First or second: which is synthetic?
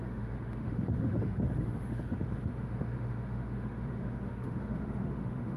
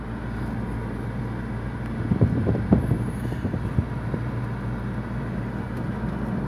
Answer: first